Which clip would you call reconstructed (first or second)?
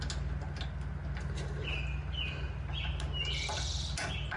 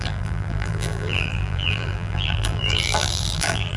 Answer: second